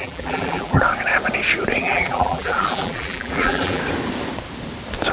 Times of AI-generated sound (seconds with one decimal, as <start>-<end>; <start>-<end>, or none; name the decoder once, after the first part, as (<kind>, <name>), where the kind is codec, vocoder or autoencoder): 0.0-0.8 (vocoder, BigVGAN v2); 1.8-3.8